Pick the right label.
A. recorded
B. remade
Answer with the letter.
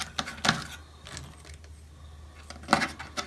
A